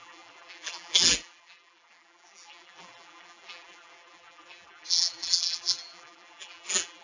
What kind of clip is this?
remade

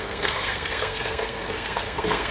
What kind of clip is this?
remade